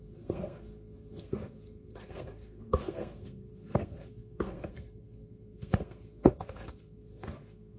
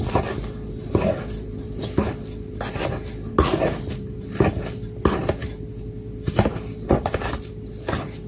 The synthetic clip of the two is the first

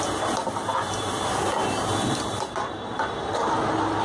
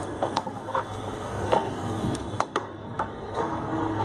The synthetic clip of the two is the second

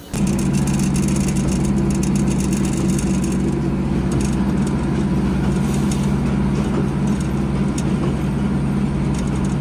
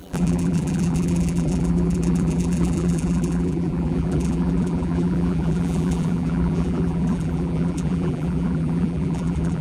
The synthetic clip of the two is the second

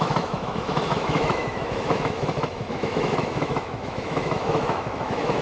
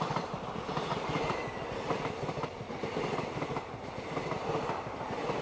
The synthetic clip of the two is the first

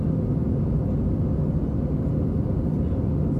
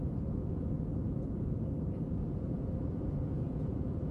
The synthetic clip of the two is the second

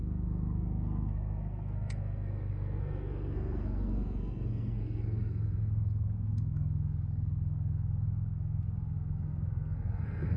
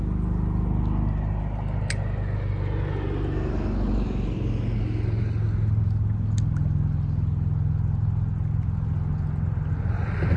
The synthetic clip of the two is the first